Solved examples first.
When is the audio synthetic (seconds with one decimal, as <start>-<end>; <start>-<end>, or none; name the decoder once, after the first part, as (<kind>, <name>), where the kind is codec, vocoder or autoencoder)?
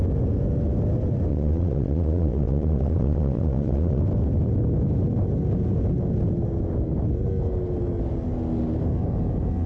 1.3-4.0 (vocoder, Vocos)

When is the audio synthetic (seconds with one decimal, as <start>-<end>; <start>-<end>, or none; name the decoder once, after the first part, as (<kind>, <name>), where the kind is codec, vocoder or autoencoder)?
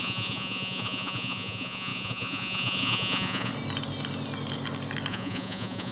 0.0-3.5 (vocoder, Vocos); 5.1-5.9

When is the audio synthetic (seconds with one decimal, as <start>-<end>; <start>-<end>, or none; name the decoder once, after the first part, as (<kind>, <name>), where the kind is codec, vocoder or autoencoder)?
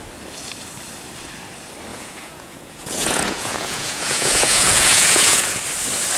1.9-5.6 (vocoder, Vocos)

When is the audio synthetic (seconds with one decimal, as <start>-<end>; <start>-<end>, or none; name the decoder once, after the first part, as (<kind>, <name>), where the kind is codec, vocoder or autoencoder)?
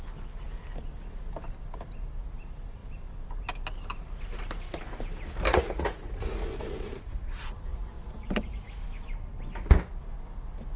5.5-8.8 (vocoder, Vocos)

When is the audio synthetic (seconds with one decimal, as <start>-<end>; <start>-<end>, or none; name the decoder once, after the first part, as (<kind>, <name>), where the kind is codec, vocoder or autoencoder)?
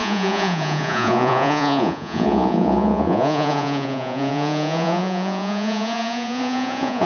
0.0-7.1 (vocoder, Vocos)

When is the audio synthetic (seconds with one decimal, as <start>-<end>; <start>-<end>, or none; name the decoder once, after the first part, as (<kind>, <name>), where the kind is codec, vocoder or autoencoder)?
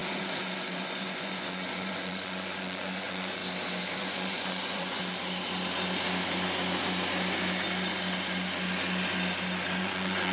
0.0-3.4 (vocoder, Vocos); 4.0-5.0; 9.8-10.3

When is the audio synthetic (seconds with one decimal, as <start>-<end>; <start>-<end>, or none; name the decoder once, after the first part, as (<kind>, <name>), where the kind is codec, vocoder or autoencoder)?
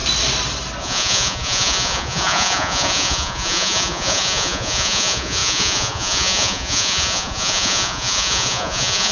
0.8-9.1 (vocoder, Vocos)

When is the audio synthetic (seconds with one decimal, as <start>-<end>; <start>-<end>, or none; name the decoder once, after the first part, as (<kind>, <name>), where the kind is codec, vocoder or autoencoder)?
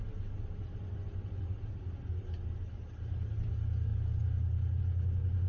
none